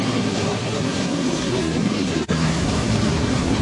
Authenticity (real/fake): fake